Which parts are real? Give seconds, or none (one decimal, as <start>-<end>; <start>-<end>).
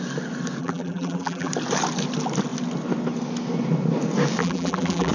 0.0-0.6; 1.5-4.4